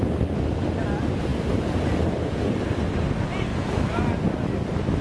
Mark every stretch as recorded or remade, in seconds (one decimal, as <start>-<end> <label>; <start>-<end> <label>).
0.0-3.5 recorded; 3.5-4.0 remade; 4.0-5.0 recorded